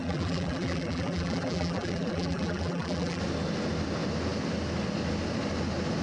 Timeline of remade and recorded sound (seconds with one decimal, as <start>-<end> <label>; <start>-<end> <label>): 0.0-3.2 remade; 3.2-6.0 recorded